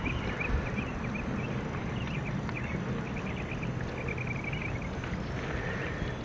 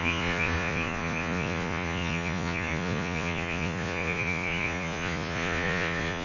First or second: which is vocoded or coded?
second